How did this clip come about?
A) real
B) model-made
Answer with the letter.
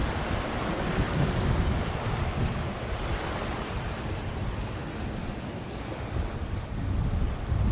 A